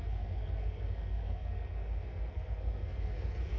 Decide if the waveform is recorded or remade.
remade